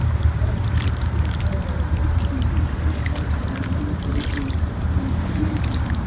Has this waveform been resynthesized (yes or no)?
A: yes